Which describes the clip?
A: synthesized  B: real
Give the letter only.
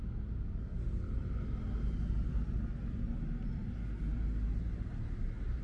B